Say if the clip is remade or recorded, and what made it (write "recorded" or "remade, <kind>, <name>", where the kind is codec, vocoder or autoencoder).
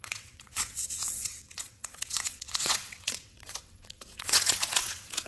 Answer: remade, vocoder, WaveNeXt